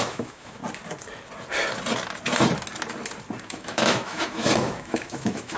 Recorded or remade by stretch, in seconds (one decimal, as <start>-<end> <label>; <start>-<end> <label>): 0.0-0.6 remade; 0.6-3.4 recorded; 3.4-5.6 remade